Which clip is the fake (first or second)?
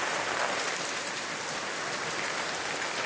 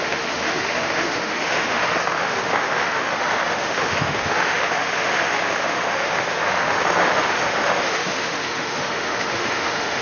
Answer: second